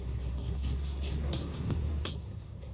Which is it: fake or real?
fake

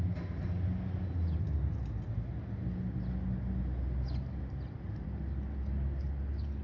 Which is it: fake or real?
real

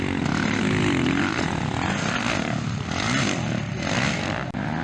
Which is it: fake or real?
real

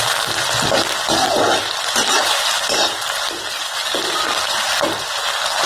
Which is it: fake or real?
real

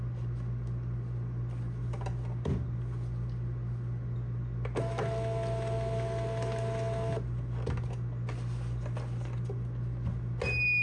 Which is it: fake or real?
real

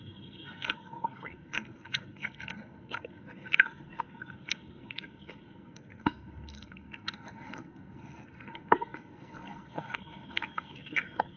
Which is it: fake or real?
fake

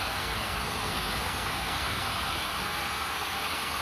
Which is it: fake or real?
fake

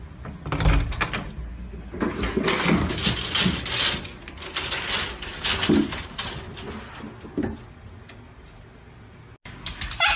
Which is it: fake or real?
real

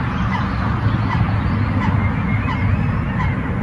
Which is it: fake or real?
real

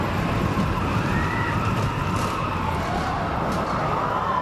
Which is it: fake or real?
real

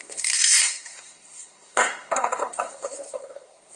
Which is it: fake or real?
fake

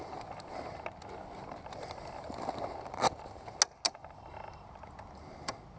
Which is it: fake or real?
real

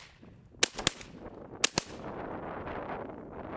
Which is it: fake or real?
real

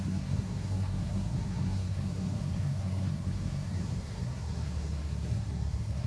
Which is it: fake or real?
fake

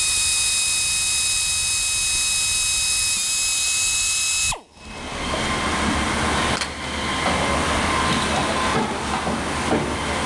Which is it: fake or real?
real